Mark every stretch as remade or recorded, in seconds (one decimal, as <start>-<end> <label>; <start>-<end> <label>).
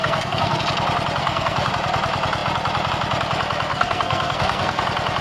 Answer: 0.0-0.6 remade; 0.6-1.2 recorded; 1.2-1.7 remade; 1.7-3.7 recorded; 3.7-4.8 remade; 4.8-5.2 recorded